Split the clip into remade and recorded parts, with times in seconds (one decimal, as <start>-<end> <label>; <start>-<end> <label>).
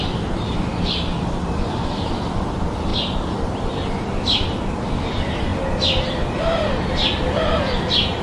0.0-8.2 recorded